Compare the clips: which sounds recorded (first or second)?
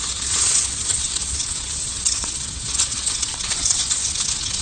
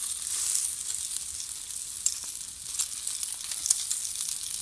second